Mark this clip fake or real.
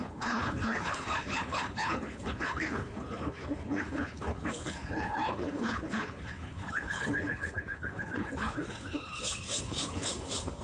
fake